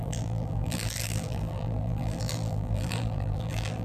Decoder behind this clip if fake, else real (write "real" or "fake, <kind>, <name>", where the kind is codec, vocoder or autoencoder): fake, vocoder, BigVGAN v2